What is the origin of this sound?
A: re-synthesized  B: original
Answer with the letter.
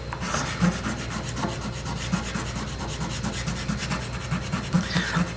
B